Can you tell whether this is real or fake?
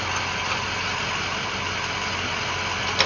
real